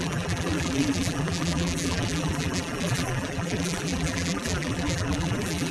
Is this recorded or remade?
remade